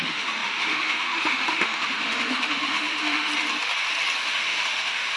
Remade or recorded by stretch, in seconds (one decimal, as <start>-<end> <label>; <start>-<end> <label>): 0.0-3.3 remade; 3.3-4.2 recorded; 4.2-5.2 remade